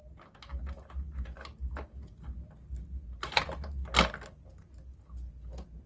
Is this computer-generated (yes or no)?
no